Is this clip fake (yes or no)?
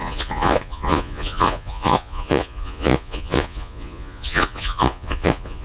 yes